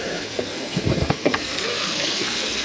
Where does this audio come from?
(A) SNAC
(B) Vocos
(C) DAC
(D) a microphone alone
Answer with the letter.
A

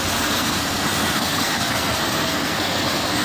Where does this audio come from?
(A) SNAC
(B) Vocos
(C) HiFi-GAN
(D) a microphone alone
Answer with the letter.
A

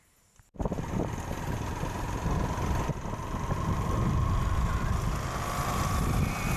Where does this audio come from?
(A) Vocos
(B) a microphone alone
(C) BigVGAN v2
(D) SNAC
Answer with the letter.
B